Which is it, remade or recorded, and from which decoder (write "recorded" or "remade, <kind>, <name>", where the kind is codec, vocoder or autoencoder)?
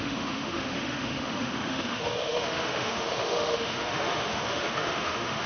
remade, autoencoder, DAC-VAE